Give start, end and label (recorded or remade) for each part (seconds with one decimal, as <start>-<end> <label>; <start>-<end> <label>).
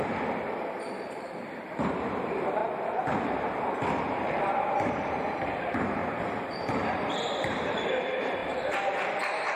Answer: 0.0-2.6 remade; 2.6-4.2 recorded; 4.2-6.0 remade; 6.0-7.7 recorded; 7.7-9.6 remade